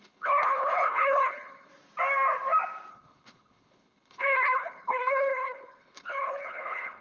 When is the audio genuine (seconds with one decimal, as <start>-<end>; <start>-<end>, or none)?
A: 1.7-2.9